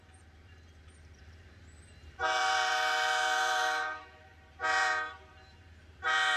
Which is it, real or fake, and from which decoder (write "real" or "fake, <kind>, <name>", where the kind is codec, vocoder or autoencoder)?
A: fake, vocoder, BigVGAN v2